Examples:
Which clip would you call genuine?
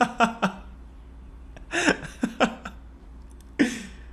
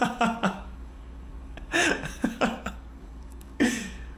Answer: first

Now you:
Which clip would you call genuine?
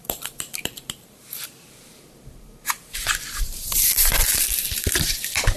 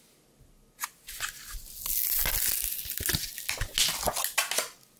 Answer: second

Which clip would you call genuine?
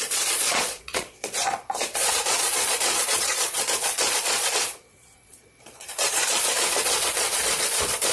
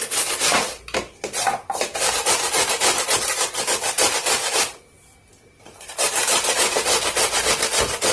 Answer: second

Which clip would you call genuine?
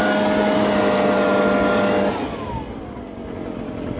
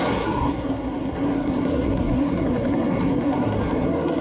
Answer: first